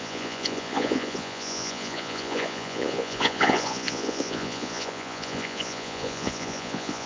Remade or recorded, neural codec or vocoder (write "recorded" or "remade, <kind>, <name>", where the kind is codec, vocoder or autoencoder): remade, vocoder, Vocos